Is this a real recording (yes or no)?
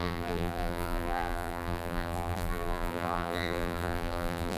no